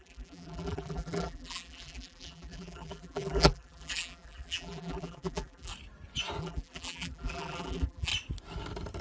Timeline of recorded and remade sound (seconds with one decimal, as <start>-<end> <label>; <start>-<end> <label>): 0.0-5.7 remade; 5.7-6.4 recorded; 6.4-8.1 remade; 8.1-9.0 recorded